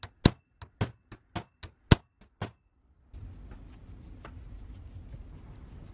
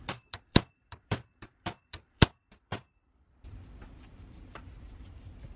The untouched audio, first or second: first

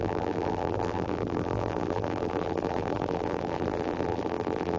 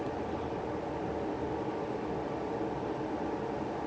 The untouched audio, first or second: second